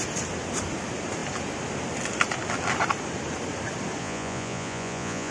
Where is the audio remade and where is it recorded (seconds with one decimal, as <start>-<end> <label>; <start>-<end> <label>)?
0.0-4.0 recorded; 4.0-5.3 remade